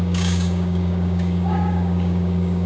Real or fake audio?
fake